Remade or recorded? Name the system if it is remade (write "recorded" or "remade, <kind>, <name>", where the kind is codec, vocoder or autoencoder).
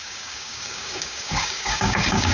remade, codec, DAC